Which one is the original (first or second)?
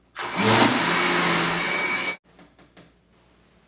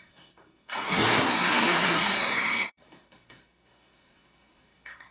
first